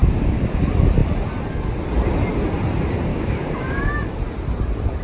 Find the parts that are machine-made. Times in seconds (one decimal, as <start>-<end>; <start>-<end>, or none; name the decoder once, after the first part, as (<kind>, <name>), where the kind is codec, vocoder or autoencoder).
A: 0.0-0.6 (codec, DAC); 3.1-3.9